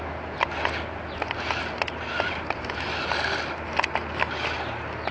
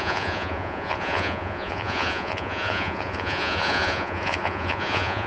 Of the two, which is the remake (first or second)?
second